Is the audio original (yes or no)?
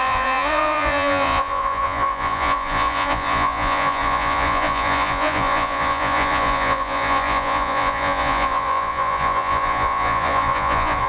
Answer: no